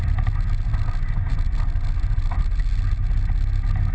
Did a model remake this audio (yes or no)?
no